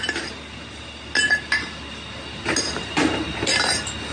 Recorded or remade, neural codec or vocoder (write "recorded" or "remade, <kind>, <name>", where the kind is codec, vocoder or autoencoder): recorded